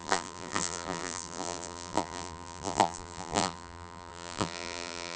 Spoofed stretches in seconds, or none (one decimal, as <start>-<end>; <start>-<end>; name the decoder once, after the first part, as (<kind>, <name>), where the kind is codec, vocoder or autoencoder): 0.0-5.2 (vocoder, BigVGAN v2)